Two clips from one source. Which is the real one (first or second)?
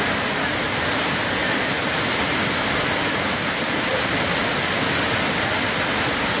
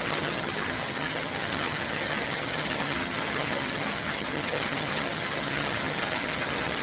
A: first